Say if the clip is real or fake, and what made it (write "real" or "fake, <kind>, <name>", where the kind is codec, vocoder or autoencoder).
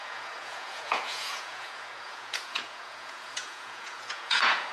fake, vocoder, Vocos